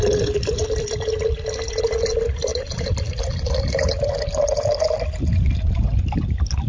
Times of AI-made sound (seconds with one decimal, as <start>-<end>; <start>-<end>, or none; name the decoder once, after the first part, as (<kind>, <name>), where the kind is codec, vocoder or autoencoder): 2.5-3.3 (vocoder, BigVGAN v2)